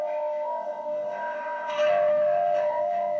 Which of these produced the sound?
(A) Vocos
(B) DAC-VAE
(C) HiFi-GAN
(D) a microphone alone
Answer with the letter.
B